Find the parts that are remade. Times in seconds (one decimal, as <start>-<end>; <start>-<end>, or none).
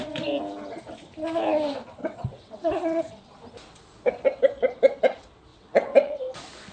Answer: 2.0-3.1; 5.5-6.2